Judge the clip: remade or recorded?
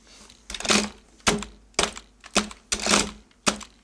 recorded